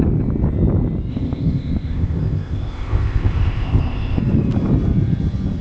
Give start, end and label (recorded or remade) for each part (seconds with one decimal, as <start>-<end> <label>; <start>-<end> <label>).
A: 0.0-1.1 recorded; 1.1-4.2 remade; 4.2-5.6 recorded